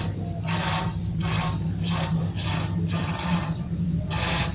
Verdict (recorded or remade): recorded